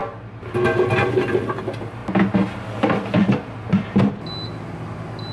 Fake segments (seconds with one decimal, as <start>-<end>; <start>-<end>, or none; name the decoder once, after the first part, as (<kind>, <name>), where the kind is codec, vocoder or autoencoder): none

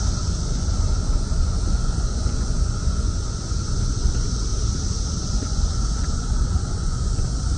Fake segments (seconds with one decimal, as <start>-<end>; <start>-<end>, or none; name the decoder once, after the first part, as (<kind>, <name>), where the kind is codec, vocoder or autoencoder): 0.0-4.5 (vocoder, Vocos); 5.2-7.6